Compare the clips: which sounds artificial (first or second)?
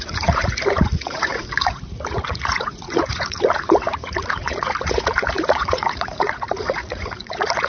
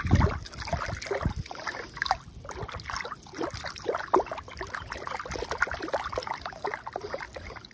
first